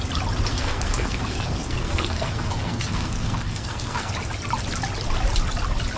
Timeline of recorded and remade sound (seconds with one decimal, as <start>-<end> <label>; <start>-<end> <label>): 0.0-0.5 recorded; 0.5-4.1 remade; 4.1-6.0 recorded